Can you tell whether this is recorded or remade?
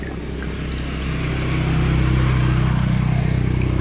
recorded